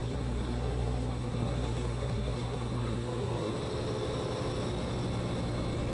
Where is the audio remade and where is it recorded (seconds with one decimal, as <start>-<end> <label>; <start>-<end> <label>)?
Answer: 0.0-3.5 remade; 3.5-5.9 recorded